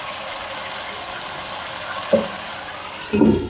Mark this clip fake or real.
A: real